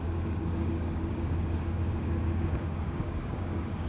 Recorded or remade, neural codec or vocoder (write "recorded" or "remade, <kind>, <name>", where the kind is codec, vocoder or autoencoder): remade, codec, DAC